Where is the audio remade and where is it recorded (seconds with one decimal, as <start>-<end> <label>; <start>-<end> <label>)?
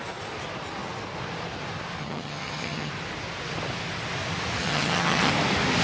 0.0-2.0 recorded; 2.0-2.9 remade; 2.9-4.6 recorded; 4.6-5.3 remade; 5.3-5.8 recorded